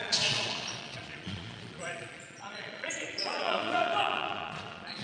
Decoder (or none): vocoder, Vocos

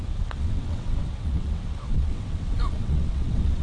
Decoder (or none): vocoder, WaveNeXt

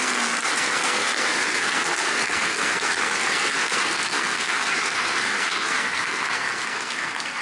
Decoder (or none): codec, SNAC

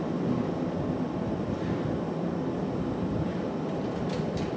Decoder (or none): none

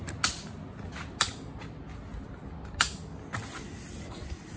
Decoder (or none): none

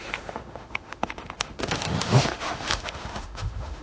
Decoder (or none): autoencoder, DAC-VAE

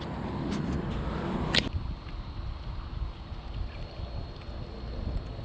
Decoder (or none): none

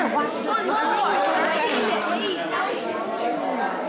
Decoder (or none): none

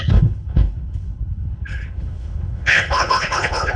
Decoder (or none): codec, HILCodec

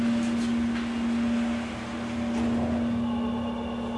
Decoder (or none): none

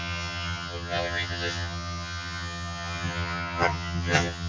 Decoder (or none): vocoder, HiFi-GAN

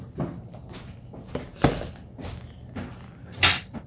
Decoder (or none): none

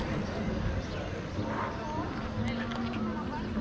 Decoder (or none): none